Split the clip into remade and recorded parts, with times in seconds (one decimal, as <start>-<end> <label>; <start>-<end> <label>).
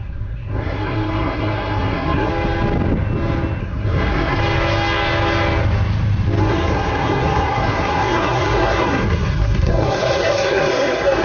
0.0-2.3 remade; 2.3-3.6 recorded; 3.6-4.4 remade; 4.4-6.4 recorded; 6.4-11.2 remade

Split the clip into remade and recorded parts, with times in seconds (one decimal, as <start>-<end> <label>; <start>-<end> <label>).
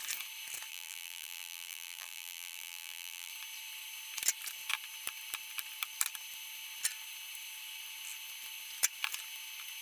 0.0-0.7 recorded; 0.7-3.3 remade; 3.3-9.8 recorded